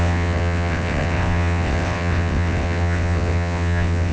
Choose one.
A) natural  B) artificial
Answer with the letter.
B